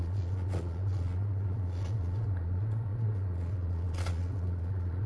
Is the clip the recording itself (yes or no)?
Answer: no